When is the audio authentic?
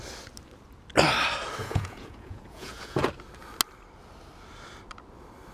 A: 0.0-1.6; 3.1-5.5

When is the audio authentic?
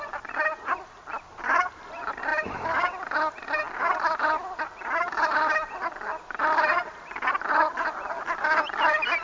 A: 0.0-9.2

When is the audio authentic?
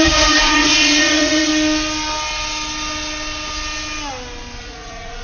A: 1.5-4.6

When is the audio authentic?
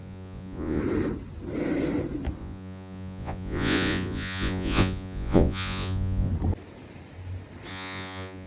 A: 0.8-2.4; 6.3-7.7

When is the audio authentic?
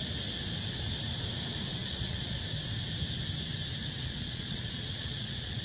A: 0.0-1.8; 2.4-4.0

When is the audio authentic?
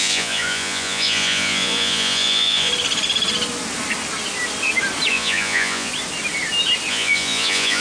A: 2.7-5.1; 5.9-6.9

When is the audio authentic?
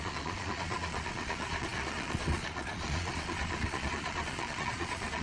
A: none